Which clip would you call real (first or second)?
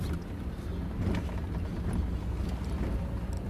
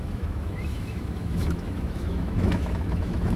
first